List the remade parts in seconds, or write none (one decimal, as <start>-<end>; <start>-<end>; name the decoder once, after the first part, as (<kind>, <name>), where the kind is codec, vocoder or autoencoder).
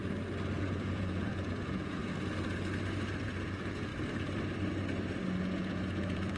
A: 0.6-2.0 (vocoder, Vocos); 3.2-3.9; 5.4-6.4